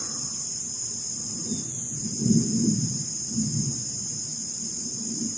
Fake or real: real